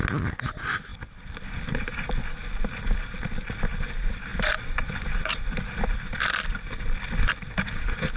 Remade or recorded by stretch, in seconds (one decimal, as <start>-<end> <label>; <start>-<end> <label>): 0.0-8.2 recorded